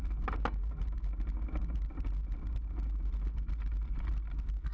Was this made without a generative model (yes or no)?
yes